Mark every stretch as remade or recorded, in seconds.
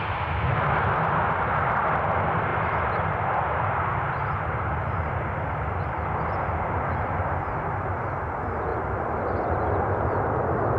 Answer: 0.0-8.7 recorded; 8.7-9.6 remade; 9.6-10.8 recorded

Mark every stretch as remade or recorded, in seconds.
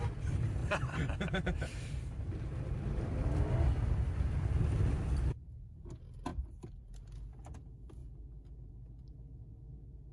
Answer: 0.0-0.6 recorded; 0.6-3.5 remade; 3.5-6.3 recorded; 6.3-6.9 remade; 6.9-10.1 recorded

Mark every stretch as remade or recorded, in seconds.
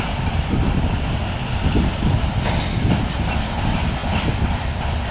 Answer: 0.0-5.1 recorded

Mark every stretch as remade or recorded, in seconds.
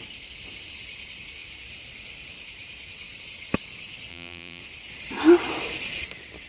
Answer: 0.0-4.1 recorded; 4.1-4.6 remade; 4.6-6.5 recorded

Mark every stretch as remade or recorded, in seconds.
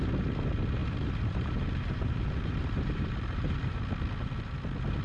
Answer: 0.0-0.8 recorded; 0.8-3.8 remade; 3.8-5.0 recorded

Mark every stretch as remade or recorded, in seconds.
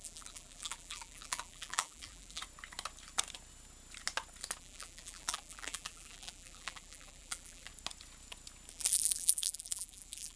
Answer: 0.0-2.4 remade; 2.4-4.6 recorded; 4.6-7.7 remade; 7.7-8.7 recorded; 8.7-10.4 remade